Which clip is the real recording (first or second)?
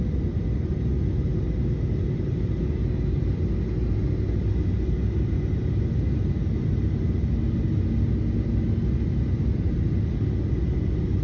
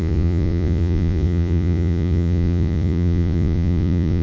first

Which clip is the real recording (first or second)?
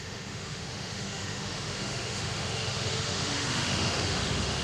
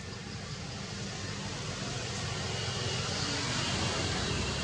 second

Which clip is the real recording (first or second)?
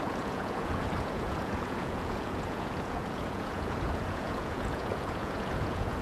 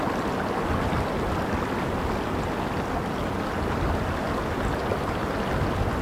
second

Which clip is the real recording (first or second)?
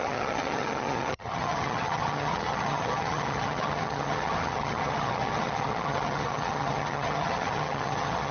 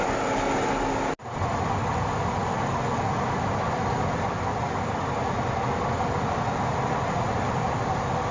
second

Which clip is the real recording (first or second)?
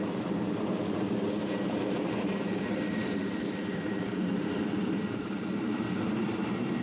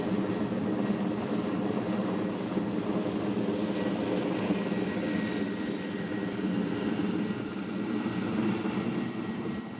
second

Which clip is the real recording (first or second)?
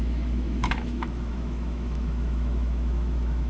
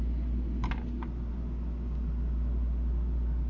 second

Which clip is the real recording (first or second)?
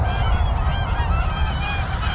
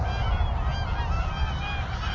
second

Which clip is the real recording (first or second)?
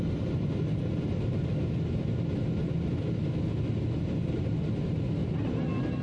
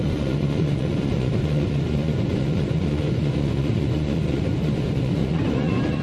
first